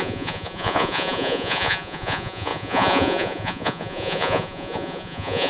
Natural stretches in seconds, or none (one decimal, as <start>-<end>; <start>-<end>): none